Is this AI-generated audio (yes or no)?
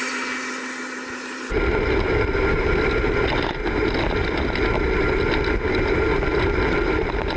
no